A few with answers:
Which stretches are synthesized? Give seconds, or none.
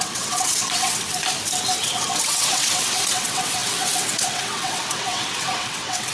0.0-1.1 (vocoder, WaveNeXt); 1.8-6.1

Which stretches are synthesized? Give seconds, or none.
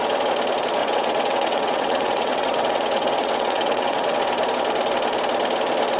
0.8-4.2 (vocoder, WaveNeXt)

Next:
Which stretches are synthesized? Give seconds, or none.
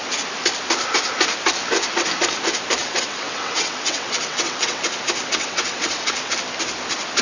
2.8-4.8 (vocoder, WaveNeXt); 5.2-6.3